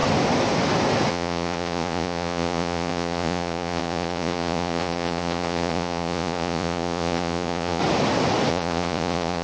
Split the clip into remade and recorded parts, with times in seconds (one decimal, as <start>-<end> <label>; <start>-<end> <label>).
0.0-1.1 recorded; 1.1-7.8 remade; 7.8-8.5 recorded; 8.5-9.4 remade